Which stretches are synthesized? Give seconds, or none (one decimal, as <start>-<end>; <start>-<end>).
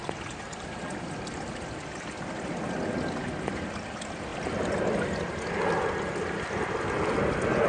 0.0-1.3